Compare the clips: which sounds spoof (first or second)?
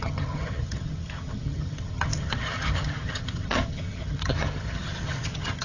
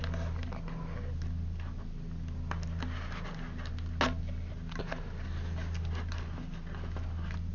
first